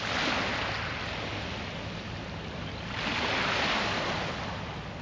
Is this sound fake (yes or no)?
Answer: no